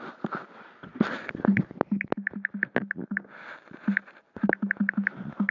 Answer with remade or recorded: recorded